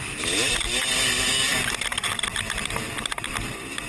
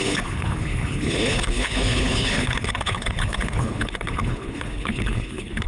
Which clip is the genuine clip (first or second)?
first